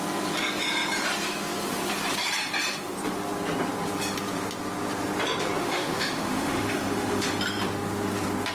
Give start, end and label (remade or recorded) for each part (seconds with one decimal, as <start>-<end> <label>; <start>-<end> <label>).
0.0-5.6 recorded; 5.6-7.3 remade; 7.3-8.5 recorded